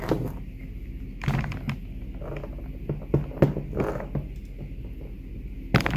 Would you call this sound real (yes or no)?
yes